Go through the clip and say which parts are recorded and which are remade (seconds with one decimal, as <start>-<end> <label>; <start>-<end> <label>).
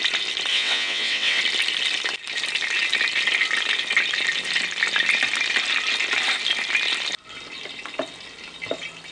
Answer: 0.0-0.5 recorded; 0.5-1.4 remade; 1.4-9.1 recorded